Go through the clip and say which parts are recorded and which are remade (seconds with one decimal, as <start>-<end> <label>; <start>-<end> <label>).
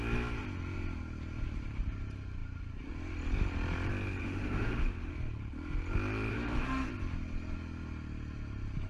0.0-4.2 recorded; 4.2-5.1 remade; 5.1-6.3 recorded; 6.3-6.9 remade; 6.9-8.9 recorded